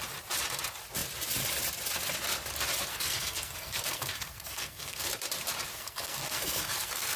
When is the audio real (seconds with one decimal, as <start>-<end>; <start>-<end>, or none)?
0.0-2.9; 5.1-5.7